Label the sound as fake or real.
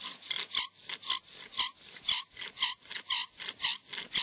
real